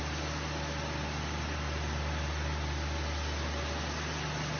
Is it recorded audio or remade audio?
recorded